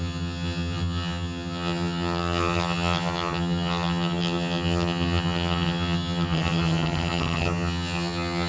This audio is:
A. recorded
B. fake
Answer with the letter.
B